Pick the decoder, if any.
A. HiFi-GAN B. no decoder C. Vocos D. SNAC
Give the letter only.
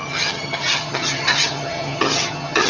A